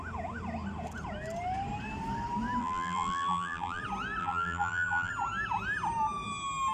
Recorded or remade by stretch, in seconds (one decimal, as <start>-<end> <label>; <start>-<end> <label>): 0.0-2.6 recorded; 2.6-3.8 remade; 3.8-4.2 recorded; 4.2-5.1 remade; 5.1-6.7 recorded